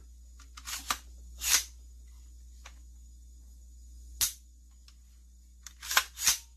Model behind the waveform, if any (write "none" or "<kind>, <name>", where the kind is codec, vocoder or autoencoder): none